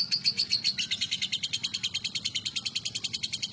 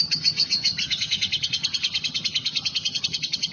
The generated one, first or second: second